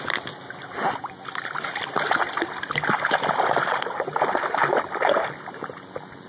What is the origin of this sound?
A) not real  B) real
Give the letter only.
B